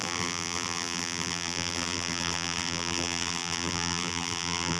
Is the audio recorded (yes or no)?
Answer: no